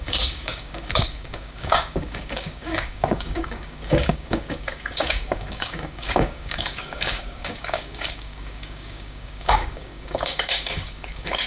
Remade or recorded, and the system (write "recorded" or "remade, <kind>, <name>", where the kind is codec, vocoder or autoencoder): remade, codec, DAC